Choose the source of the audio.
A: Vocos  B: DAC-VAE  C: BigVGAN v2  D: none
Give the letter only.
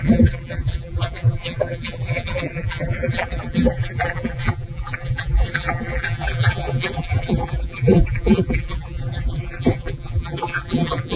C